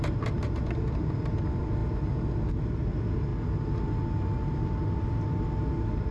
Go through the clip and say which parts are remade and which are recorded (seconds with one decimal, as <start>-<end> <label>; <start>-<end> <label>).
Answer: 0.0-6.1 recorded